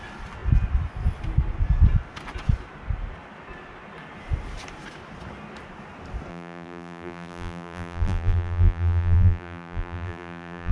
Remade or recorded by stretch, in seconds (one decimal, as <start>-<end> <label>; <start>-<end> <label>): 0.0-6.3 recorded; 6.3-10.7 remade